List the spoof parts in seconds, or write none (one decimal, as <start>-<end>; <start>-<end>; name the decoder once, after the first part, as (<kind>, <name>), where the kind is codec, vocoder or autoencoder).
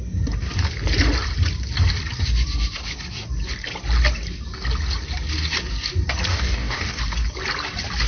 6.3-7.0 (codec, DAC)